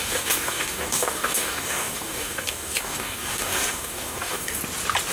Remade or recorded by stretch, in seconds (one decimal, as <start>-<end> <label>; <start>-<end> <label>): 0.0-4.6 remade; 4.6-5.1 recorded